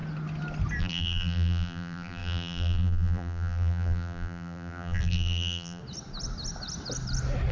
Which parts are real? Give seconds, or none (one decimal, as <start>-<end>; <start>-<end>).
0.0-0.8; 5.8-7.5